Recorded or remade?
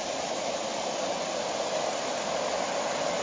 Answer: recorded